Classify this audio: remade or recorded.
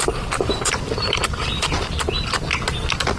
recorded